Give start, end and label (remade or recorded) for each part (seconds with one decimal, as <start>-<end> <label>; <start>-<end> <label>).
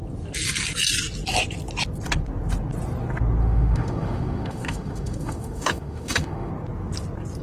0.0-3.4 recorded; 3.4-6.5 remade; 6.5-7.4 recorded